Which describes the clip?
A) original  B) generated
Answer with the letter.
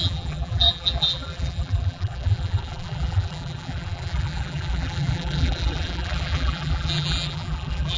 B